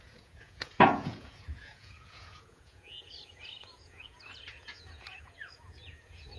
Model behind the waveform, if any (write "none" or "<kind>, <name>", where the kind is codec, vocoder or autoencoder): vocoder, Vocos